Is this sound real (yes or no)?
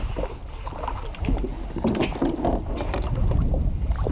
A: yes